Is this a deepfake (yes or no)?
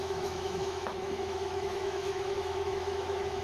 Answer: yes